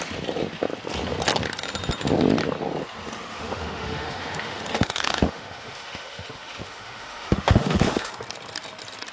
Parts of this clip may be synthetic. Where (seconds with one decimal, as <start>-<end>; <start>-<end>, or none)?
3.3-8.1